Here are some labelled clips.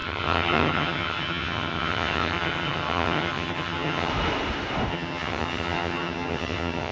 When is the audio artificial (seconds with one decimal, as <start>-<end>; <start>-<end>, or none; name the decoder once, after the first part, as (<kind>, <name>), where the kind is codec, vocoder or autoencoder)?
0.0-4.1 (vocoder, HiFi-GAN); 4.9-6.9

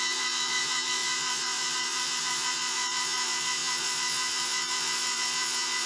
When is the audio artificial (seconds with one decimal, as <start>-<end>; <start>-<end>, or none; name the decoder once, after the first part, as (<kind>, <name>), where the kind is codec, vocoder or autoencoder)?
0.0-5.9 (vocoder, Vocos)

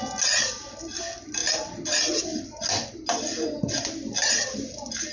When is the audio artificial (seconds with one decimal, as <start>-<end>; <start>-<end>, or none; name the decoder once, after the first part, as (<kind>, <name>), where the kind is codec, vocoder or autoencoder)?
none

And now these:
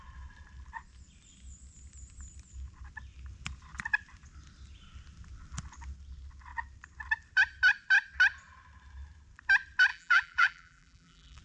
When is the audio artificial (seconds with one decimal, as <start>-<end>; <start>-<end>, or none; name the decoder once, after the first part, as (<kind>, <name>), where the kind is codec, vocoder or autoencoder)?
9.9-11.4 (vocoder, BigVGAN v2)

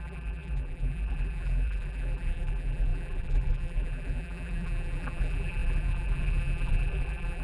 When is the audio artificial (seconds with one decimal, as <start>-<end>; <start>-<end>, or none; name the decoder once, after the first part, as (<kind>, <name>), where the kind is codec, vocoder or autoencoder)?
0.0-7.4 (vocoder, BigVGAN v2)

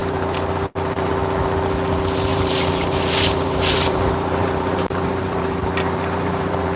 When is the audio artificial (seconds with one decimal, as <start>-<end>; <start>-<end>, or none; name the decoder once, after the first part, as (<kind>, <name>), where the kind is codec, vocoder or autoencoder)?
0.0-1.1 (vocoder, BigVGAN v2); 2.3-6.8

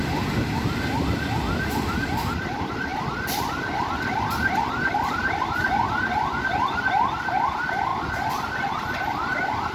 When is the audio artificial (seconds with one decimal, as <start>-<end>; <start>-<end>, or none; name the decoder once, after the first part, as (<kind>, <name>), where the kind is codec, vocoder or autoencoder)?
none

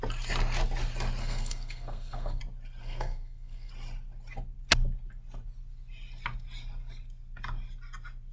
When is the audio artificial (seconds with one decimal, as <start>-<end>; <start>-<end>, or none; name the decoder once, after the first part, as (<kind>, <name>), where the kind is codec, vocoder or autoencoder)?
1.2-2.4 (codec, SNAC); 2.8-3.7